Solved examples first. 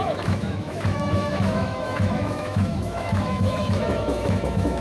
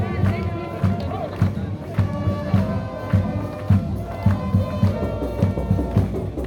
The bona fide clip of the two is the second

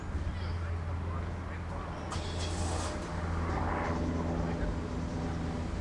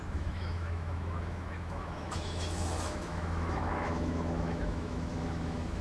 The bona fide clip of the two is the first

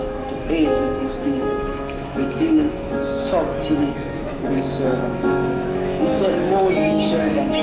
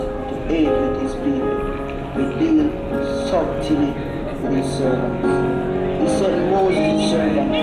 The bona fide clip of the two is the second